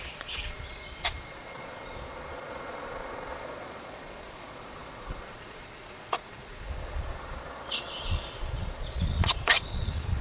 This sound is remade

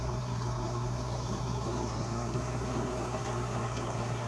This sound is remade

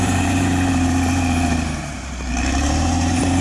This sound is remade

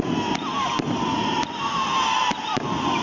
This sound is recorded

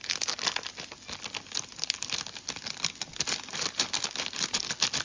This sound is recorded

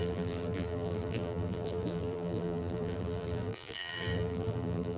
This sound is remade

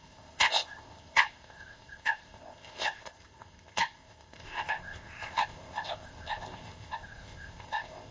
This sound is remade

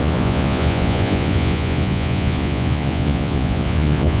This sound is remade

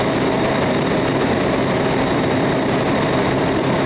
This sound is remade